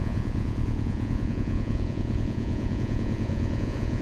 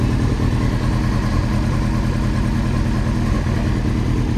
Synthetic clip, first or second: first